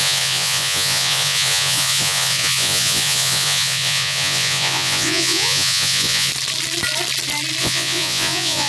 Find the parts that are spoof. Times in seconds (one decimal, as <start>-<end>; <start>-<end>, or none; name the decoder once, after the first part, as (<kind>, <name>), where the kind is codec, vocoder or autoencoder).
0.0-6.3 (vocoder, Vocos); 7.6-8.7